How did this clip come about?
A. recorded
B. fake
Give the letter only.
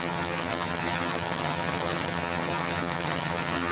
B